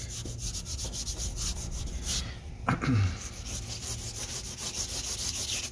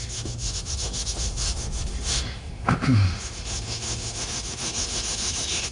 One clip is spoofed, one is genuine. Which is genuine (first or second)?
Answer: first